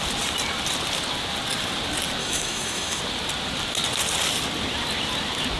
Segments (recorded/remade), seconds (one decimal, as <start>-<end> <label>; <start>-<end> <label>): 0.0-2.2 recorded; 2.2-3.0 remade; 3.0-5.6 recorded